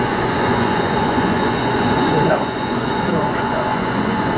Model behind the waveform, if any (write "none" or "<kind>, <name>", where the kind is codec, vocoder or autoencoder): vocoder, Vocos